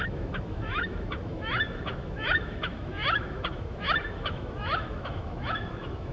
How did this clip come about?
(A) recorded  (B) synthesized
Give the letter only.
B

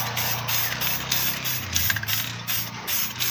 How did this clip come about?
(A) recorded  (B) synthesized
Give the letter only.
A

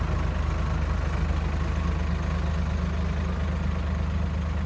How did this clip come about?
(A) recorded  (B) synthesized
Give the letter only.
A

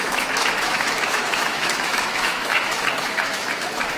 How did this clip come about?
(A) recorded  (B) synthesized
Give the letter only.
B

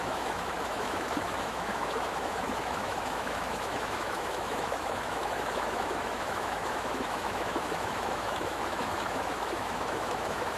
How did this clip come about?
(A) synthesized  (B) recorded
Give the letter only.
A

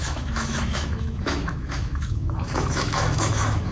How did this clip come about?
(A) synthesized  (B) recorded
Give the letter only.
A